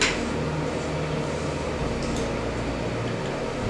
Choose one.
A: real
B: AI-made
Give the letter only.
A